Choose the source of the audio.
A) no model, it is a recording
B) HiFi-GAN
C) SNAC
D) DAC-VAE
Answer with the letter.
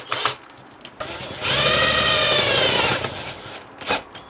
A